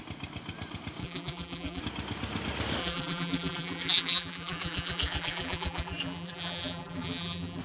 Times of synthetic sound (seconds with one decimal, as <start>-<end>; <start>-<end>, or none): 1.0-1.8; 2.8-7.6